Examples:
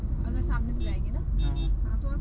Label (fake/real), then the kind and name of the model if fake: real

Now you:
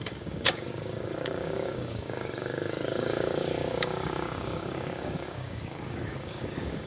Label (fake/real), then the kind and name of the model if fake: fake, codec, DAC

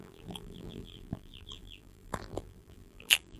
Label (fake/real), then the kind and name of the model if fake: fake, vocoder, BigVGAN v2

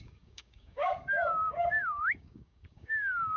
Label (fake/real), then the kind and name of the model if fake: fake, codec, DAC